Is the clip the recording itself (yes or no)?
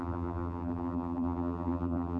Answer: no